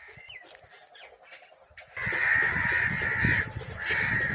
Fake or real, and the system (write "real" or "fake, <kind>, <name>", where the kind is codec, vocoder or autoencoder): real